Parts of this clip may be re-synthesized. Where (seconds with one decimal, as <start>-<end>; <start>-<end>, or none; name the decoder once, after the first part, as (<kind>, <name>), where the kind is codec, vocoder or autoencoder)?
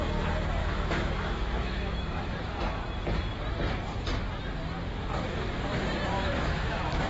0.6-2.5 (autoencoder, DAC-VAE); 6.1-7.1